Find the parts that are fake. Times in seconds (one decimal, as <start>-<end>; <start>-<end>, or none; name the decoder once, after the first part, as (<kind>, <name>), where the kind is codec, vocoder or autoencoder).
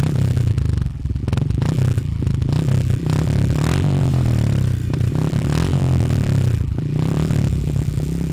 0.0-4.1 (vocoder, BigVGAN v2); 5.1-8.3